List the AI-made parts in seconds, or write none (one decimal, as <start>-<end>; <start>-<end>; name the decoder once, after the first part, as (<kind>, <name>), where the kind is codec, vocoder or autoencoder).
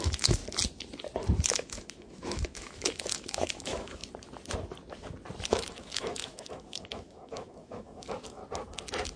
0.0-0.4 (autoencoder, DAC-VAE); 1.5-4.0; 5.5-8.4